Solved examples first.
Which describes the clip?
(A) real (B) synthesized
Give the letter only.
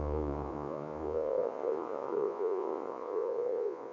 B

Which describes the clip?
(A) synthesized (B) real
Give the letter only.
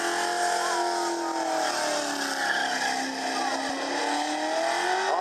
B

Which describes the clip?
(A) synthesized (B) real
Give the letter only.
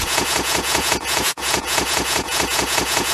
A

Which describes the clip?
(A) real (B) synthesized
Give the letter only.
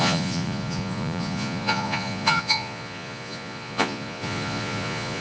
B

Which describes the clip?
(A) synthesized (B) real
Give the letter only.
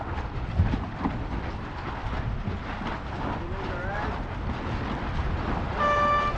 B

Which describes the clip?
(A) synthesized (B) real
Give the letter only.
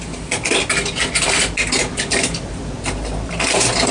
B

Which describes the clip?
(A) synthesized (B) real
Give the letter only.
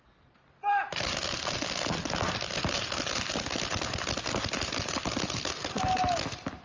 B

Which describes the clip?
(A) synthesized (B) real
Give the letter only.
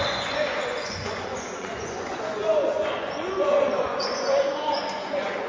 A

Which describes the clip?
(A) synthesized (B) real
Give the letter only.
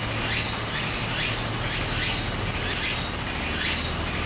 B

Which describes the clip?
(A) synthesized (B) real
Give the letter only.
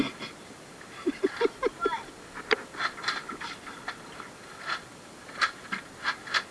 B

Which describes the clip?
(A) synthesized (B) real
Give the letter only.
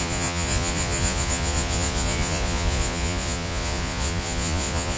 A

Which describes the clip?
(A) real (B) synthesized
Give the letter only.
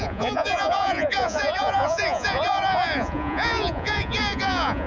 B